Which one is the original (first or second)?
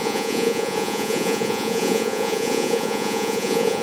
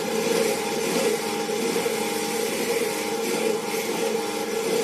second